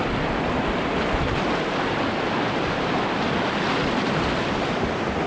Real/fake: real